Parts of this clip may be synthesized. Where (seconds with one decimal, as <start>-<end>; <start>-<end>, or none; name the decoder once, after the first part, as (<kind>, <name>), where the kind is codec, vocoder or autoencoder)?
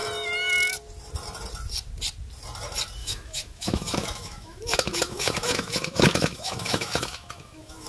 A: 3.0-7.9 (autoencoder, DAC-VAE)